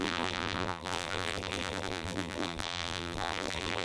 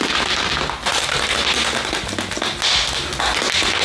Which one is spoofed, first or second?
first